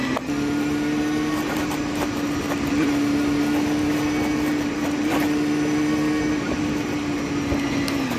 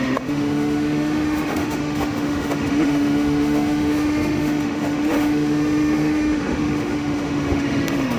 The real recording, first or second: first